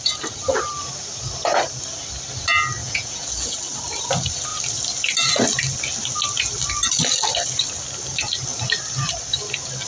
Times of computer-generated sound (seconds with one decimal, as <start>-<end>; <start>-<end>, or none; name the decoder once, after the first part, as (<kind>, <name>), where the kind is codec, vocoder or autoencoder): 2.8-3.6 (vocoder, Vocos)